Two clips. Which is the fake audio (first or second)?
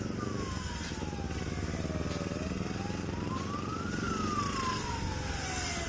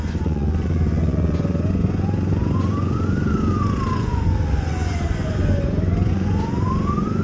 second